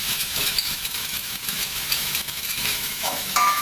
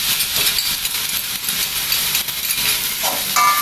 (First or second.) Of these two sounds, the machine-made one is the first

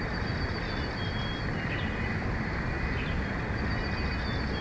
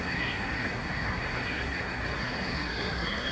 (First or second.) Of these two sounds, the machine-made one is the second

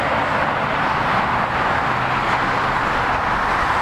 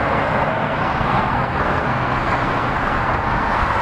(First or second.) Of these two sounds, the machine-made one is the second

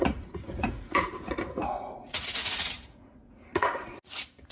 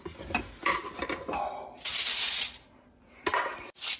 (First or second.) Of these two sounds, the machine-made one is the first